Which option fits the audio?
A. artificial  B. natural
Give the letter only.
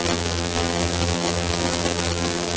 A